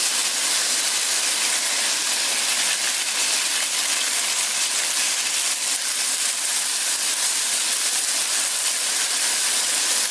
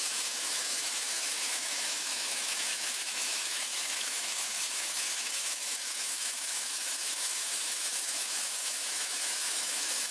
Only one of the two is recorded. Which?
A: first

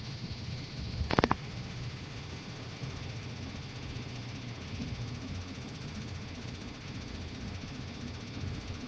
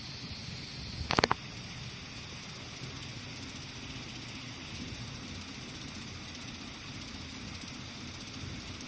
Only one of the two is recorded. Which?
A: second